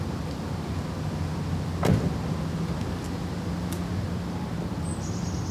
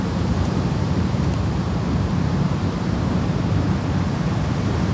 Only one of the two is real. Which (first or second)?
first